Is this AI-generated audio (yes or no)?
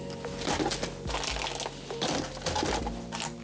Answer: no